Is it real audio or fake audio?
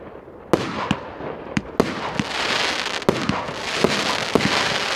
real